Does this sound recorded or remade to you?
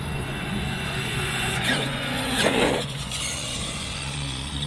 remade